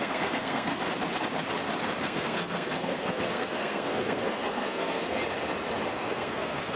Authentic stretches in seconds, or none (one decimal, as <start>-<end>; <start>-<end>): 0.8-2.0; 5.2-5.9